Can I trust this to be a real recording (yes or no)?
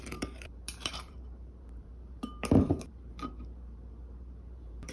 no